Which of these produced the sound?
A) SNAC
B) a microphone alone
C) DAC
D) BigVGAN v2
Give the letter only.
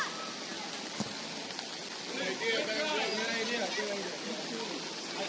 B